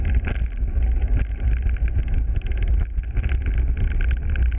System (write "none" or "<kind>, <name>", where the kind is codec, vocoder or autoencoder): none